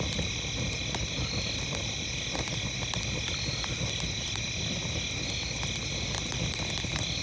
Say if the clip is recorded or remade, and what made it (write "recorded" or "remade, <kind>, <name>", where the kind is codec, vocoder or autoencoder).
recorded